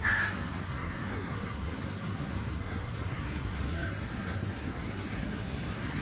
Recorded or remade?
remade